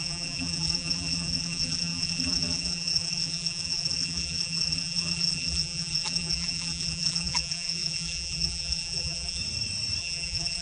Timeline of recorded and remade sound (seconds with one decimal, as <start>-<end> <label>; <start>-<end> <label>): 0.0-9.4 remade; 9.4-10.0 recorded; 10.0-10.6 remade